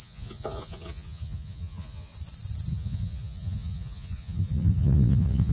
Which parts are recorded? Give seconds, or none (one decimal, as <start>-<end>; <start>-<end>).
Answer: 2.1-2.7